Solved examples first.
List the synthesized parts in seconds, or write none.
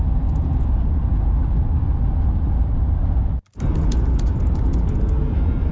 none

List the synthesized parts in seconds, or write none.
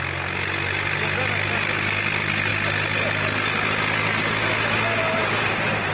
none